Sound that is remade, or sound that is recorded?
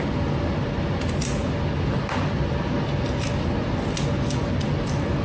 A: recorded